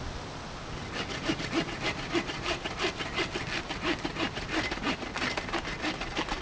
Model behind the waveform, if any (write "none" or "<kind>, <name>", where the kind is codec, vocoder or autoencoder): none